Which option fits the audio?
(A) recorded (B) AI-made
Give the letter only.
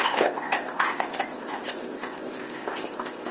B